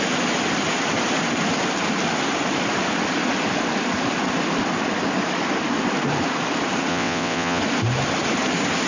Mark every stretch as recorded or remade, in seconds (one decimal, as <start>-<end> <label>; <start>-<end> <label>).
0.0-6.9 recorded; 6.9-7.6 remade; 7.6-8.9 recorded